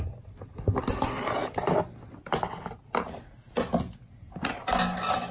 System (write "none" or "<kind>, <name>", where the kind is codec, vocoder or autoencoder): none